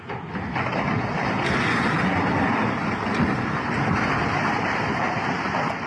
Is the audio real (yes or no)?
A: yes